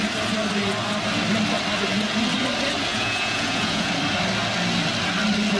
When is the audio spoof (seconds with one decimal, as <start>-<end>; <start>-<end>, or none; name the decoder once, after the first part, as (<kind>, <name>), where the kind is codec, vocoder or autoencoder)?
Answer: 2.9-3.9 (vocoder, Vocos)